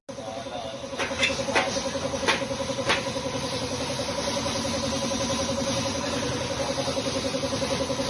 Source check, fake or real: real